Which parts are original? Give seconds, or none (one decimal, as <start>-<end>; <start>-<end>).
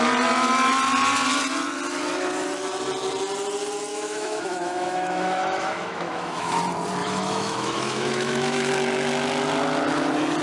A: 0.0-3.9; 6.6-7.0; 8.7-10.4